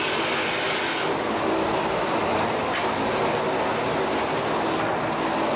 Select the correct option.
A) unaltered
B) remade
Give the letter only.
A